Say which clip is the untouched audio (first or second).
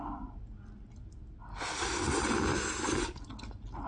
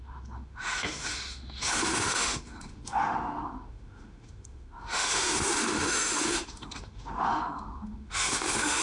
first